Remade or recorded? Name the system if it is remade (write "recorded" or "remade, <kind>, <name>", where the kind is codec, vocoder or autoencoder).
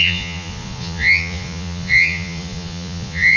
remade, vocoder, Vocos